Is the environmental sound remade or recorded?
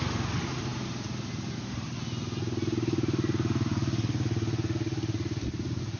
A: recorded